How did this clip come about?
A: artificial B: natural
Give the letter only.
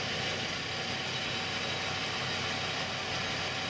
B